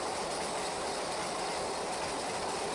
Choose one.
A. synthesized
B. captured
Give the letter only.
B